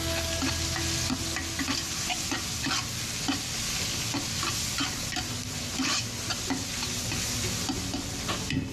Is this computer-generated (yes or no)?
no